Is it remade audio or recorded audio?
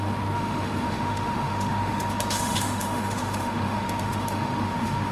remade